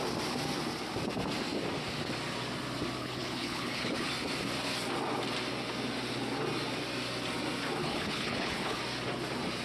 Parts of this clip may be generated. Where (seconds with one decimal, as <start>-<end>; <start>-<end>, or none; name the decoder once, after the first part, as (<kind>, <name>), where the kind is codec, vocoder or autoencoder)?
3.0-4.1 (codec, HILCodec); 7.8-8.8